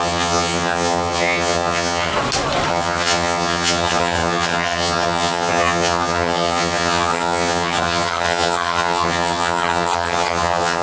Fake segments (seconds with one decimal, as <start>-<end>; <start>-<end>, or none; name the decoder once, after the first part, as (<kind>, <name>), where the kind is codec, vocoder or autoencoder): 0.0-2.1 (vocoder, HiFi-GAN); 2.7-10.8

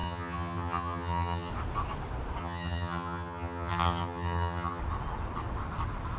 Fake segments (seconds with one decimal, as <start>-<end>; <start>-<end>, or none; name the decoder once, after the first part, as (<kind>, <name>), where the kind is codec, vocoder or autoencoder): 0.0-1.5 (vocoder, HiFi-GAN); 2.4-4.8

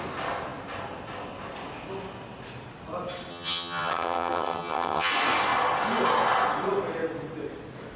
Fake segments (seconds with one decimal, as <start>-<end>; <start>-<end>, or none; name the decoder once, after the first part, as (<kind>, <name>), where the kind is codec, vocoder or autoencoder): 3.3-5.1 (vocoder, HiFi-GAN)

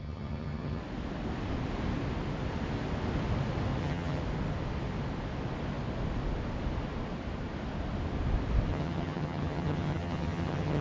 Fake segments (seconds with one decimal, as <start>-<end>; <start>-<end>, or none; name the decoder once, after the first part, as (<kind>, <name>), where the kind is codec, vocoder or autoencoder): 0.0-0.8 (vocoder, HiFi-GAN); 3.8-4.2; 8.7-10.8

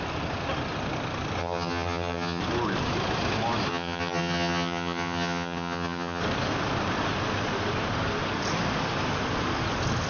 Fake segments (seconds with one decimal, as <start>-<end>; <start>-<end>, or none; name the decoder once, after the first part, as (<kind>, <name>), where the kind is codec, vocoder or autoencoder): 1.4-2.4 (vocoder, HiFi-GAN); 3.7-6.2